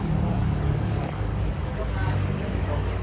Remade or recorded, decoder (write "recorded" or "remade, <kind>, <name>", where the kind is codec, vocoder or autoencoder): remade, codec, DAC